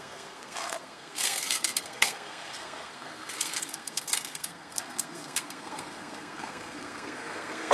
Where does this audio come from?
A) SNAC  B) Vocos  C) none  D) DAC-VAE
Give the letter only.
A